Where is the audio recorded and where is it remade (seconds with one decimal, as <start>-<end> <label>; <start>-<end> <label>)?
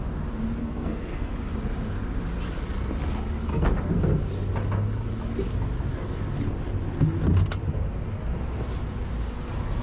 0.0-0.6 recorded; 0.6-1.3 remade; 1.3-3.5 recorded; 3.5-4.2 remade; 4.2-9.8 recorded